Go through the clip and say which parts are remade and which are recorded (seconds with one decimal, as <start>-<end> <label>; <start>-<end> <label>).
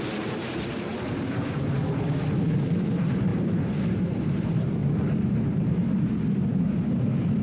0.0-0.9 remade; 0.9-2.6 recorded; 2.6-4.8 remade; 4.8-5.3 recorded; 5.3-7.4 remade